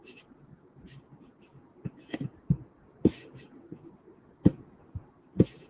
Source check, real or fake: fake